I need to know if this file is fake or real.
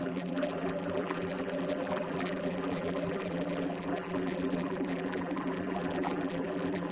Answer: fake